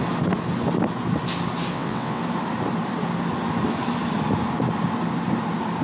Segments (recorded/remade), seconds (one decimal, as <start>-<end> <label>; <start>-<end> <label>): 0.0-1.7 recorded; 1.7-2.2 remade; 2.2-5.8 recorded